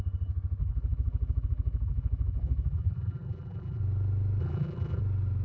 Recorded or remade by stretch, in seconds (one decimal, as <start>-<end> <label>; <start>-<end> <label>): 0.0-0.6 recorded; 0.6-3.8 remade; 3.8-4.4 recorded; 4.4-5.0 remade; 5.0-5.4 recorded